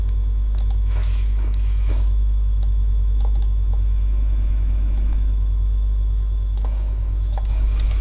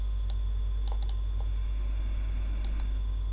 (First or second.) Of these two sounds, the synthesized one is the first